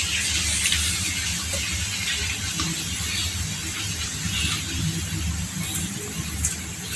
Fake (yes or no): no